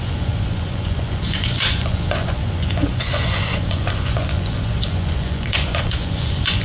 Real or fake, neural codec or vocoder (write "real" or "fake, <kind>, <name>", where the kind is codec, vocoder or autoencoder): fake, vocoder, Vocos